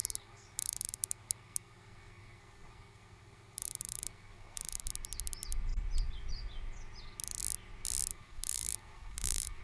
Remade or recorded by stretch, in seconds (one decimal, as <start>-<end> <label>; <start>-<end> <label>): 0.0-4.9 remade; 4.9-8.1 recorded; 8.1-9.6 remade